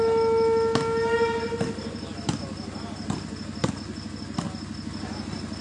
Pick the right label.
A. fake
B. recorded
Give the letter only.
B